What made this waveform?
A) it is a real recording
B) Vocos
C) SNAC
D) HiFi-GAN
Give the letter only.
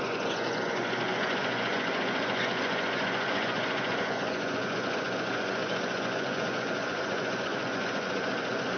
B